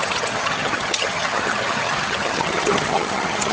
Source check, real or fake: fake